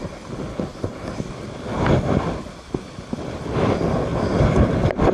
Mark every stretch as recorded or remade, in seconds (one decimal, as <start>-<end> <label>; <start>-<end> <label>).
0.0-0.5 recorded; 0.5-1.1 remade; 1.1-5.1 recorded